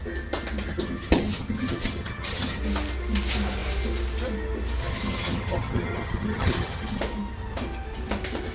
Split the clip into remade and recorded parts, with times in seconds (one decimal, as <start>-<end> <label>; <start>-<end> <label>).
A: 0.0-0.7 recorded; 0.7-2.6 remade; 2.6-4.8 recorded; 4.8-7.0 remade; 7.0-8.5 recorded